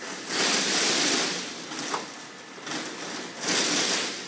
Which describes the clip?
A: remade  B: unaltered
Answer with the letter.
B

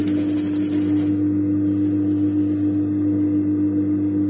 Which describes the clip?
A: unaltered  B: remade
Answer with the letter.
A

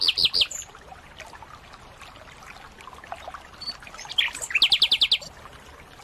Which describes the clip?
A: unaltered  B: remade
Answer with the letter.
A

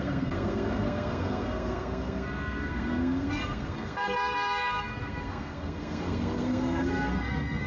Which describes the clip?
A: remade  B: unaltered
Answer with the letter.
A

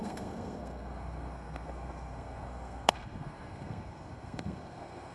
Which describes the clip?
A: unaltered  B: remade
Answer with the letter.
B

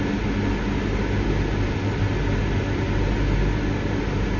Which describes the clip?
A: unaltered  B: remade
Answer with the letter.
A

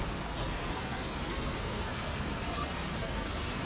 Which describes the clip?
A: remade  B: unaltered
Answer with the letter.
A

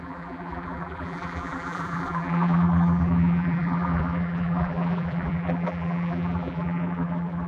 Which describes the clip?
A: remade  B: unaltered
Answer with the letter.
A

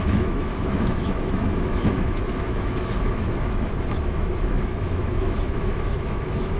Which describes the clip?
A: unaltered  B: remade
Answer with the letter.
B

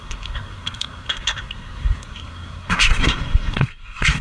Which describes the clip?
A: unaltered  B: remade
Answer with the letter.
B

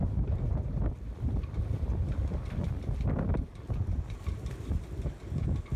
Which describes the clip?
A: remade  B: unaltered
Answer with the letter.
B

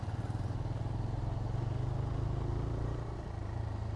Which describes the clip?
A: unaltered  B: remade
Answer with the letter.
A